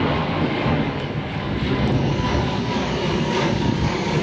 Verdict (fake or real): fake